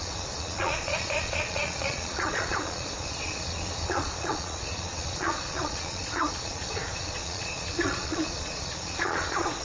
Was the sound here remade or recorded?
remade